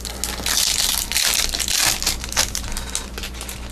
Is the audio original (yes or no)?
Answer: yes